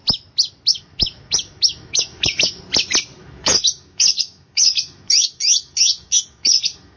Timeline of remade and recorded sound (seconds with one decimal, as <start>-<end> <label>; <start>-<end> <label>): 0.0-0.7 recorded; 0.7-2.6 remade; 2.6-3.2 recorded; 3.2-7.0 remade